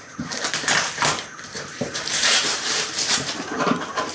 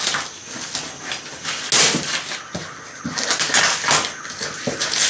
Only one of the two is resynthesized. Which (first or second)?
first